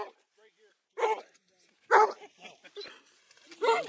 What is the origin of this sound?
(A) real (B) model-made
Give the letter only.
A